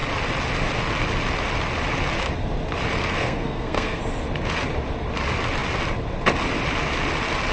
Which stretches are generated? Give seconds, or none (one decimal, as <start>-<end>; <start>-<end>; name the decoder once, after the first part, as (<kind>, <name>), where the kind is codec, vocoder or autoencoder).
3.2-4.0 (codec, SNAC)